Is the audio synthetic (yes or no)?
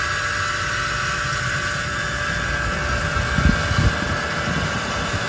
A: no